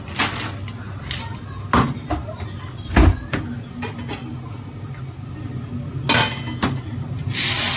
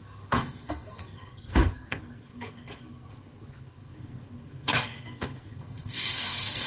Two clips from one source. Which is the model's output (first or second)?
second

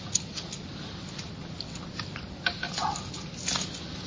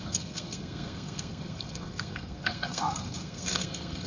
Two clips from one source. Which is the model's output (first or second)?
second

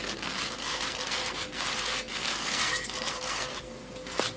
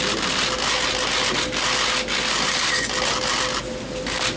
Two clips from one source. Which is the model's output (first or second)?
first